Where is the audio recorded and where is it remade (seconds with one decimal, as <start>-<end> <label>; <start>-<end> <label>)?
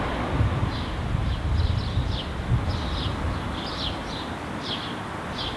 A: 0.0-5.6 recorded